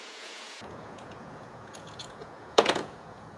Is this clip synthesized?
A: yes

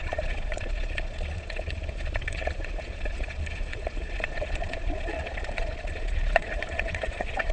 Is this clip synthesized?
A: yes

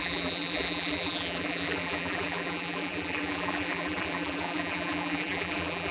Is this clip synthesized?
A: yes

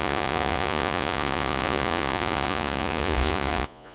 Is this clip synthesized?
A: yes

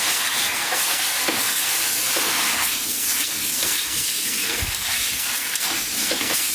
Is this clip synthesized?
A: yes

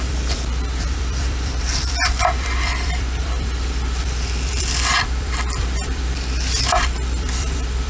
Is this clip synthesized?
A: yes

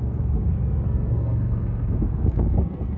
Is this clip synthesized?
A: yes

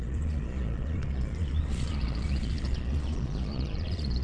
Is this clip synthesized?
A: yes